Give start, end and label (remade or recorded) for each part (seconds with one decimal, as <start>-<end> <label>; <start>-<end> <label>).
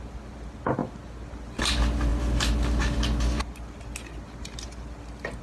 0.0-5.4 recorded